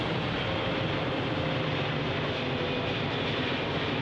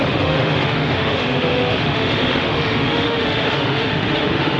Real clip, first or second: first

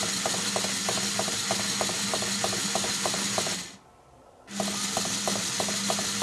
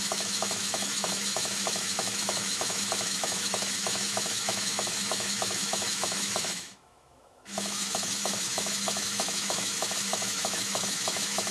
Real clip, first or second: first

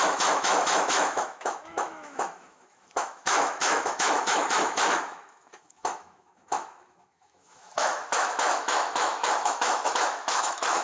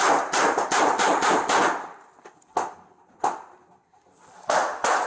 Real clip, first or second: second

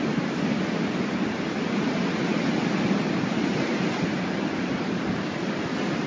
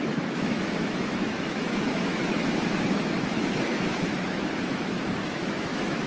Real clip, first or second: first